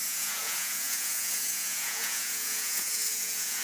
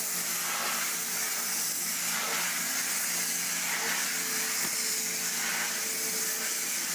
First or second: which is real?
second